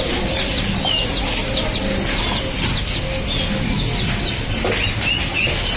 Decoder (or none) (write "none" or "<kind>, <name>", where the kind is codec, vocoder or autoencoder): none